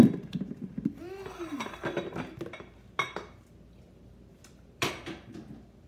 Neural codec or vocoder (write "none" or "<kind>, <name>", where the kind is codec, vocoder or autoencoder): none